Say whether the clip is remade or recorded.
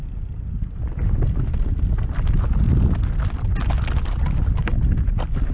recorded